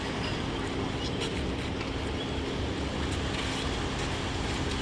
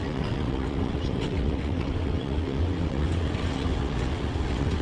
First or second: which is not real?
second